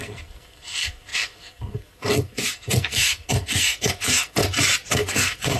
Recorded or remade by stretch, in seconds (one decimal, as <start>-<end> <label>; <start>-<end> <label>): 0.0-4.4 remade; 4.4-4.9 recorded; 4.9-5.6 remade